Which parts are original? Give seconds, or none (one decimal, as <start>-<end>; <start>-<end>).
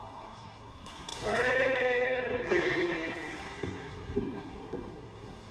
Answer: none